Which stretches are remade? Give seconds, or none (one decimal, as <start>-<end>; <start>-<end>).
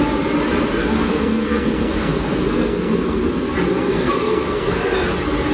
0.8-3.3; 3.7-4.8